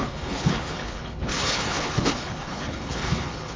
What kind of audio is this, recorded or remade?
remade